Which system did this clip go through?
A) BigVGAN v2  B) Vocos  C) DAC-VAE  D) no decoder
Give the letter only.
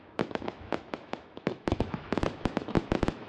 C